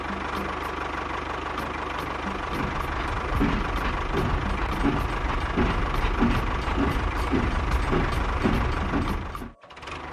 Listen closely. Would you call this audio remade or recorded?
recorded